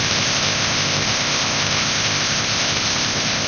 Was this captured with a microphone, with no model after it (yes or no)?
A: no